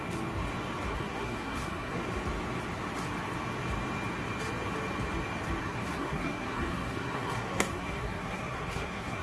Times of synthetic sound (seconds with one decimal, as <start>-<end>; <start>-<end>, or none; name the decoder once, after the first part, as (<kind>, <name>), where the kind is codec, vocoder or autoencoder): 0.9-2.0 (codec, SNAC); 5.6-9.2